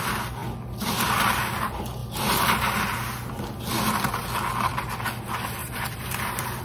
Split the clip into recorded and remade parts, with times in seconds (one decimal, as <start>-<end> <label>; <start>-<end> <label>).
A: 0.0-2.0 recorded; 2.0-2.8 remade; 2.8-5.6 recorded; 5.6-6.6 remade